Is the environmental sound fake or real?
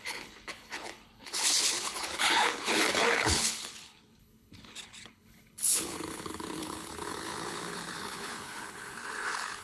fake